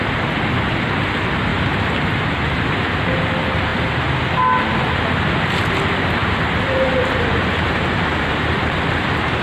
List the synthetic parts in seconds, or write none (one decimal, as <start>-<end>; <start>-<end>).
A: 1.5-2.9; 6.2-8.8